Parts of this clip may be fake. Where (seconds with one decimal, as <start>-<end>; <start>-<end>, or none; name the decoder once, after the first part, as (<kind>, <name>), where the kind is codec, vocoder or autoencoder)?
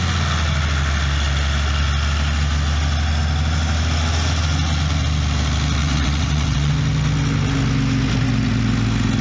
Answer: 5.8-6.7 (vocoder, WaveNeXt)